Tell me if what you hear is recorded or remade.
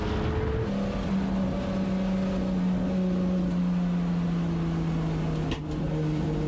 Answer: recorded